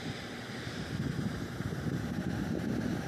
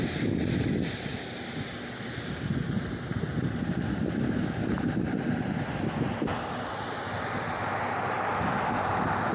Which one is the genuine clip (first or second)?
second